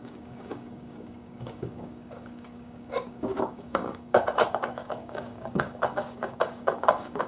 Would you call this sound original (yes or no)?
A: no